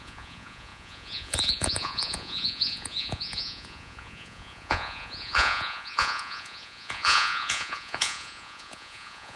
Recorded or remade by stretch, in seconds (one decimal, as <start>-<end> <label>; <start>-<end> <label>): 0.0-9.4 remade

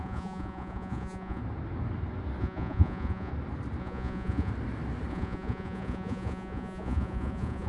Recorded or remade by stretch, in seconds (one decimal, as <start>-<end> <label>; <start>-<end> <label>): 0.0-1.4 remade; 1.4-2.4 recorded; 2.4-3.3 remade; 3.3-3.8 recorded; 3.8-4.5 remade; 4.5-5.1 recorded; 5.1-7.7 remade

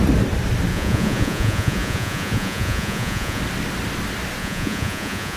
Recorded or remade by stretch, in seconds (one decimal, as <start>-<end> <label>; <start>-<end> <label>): 0.0-0.7 recorded; 0.7-3.4 remade; 3.4-4.4 recorded; 4.4-5.4 remade

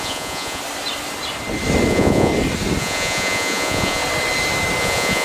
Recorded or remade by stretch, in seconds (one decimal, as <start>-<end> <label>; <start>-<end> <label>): 0.0-0.6 remade; 0.6-1.9 recorded; 1.9-2.3 remade; 2.3-2.8 recorded; 2.8-4.0 remade; 4.0-4.8 recorded; 4.8-5.2 remade

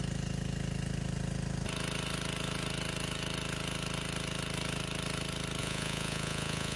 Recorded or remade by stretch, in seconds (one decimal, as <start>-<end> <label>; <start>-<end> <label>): 0.0-5.6 recorded; 5.6-6.8 remade

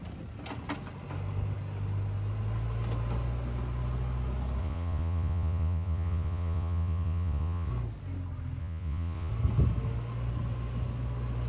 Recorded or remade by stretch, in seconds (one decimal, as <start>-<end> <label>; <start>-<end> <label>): 0.0-4.6 recorded; 4.6-7.7 remade; 7.7-8.6 recorded; 8.6-9.3 remade; 9.3-11.5 recorded